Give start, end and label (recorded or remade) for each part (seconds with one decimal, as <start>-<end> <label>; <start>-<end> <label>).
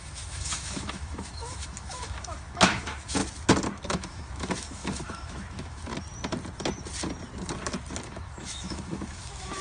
0.0-3.2 remade; 3.2-3.9 recorded; 3.9-5.9 remade; 5.9-8.0 recorded; 8.0-9.6 remade